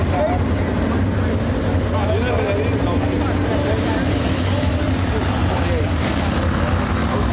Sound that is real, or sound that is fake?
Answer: real